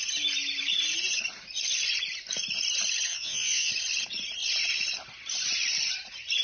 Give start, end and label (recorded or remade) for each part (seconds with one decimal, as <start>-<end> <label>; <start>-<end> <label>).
0.0-3.1 recorded; 3.1-3.7 remade; 3.7-6.4 recorded